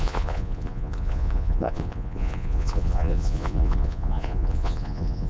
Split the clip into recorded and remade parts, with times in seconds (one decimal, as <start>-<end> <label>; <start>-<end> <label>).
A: 0.0-5.3 remade